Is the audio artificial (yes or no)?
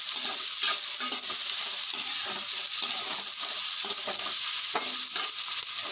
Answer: no